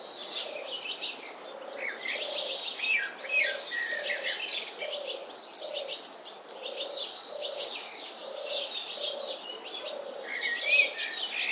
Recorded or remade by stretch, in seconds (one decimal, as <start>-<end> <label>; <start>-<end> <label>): 0.0-7.5 recorded; 7.5-8.6 remade; 8.6-11.5 recorded